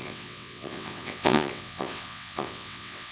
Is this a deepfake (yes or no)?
yes